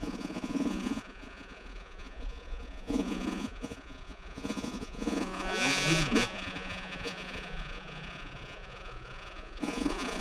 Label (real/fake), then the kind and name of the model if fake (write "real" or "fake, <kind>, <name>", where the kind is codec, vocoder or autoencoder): fake, vocoder, Vocos